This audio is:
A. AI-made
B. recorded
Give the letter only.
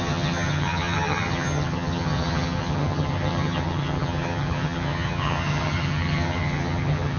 A